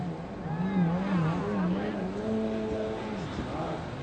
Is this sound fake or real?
real